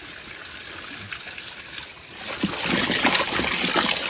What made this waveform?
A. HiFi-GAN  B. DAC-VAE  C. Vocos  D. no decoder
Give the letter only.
D